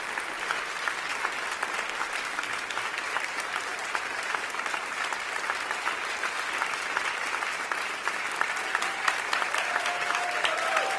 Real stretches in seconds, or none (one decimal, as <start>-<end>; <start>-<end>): 0.0-11.0

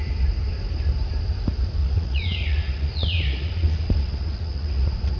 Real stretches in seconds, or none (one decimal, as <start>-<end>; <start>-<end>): 0.0-1.8

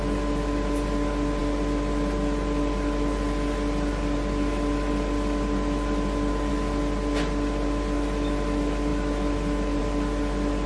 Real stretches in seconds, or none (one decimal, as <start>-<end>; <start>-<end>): 0.0-10.7

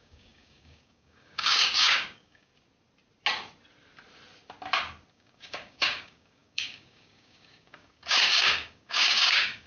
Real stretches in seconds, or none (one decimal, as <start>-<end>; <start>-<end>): 2.5-5.1

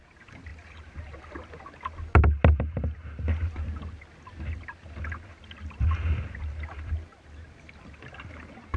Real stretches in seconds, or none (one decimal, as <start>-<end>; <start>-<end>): 0.0-8.8

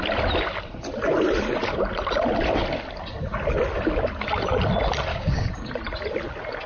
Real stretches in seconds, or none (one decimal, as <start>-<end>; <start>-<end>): 0.0-5.1; 5.7-6.7

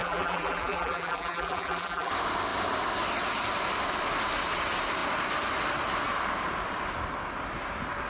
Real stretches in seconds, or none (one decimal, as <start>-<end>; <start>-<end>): 2.1-8.1